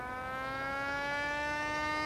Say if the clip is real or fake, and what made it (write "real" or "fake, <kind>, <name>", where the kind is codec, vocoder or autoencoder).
fake, autoencoder, DAC-VAE